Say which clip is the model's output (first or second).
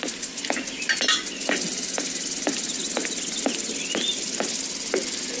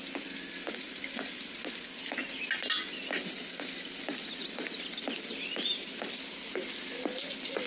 first